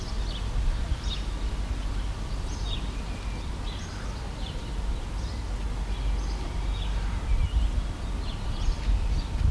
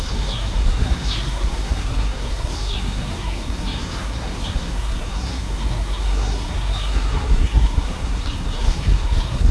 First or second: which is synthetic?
second